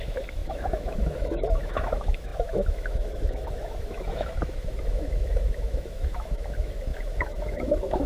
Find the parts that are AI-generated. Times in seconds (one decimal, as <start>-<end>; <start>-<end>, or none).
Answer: 0.0-8.1

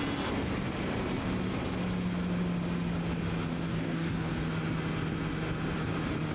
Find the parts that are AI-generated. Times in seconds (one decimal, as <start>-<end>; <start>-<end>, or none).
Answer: 3.7-4.3

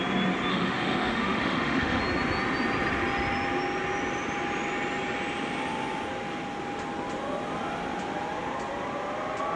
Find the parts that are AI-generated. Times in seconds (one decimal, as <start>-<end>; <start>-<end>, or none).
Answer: 0.5-2.0

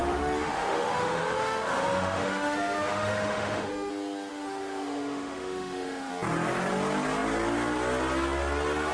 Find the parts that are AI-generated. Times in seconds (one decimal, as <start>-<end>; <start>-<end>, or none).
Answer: 0.0-3.9; 4.3-6.1

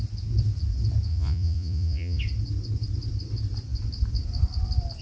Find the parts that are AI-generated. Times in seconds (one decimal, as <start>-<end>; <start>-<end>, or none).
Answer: 1.1-2.2

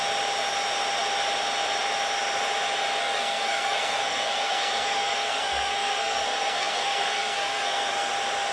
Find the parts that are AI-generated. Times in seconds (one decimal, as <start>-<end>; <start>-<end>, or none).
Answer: 3.0-8.1

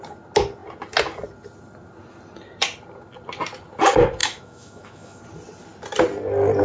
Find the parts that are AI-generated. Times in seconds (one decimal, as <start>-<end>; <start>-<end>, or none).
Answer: 4.2-5.2